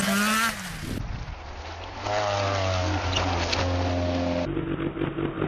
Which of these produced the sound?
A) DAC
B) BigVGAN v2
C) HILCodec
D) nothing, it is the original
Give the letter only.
D